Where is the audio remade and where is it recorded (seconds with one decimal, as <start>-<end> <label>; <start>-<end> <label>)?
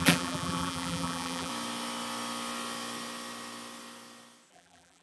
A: 0.0-1.5 remade; 1.5-4.5 recorded; 4.5-5.0 remade